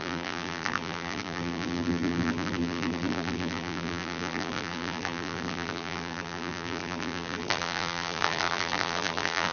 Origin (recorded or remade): remade